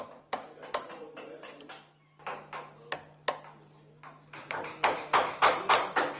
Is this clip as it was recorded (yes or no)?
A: yes